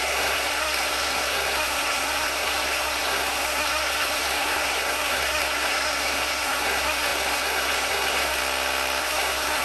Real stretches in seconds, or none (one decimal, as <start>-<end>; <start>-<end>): 8.4-9.0